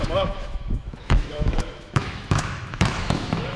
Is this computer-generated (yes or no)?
yes